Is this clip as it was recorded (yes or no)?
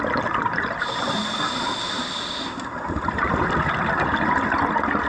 yes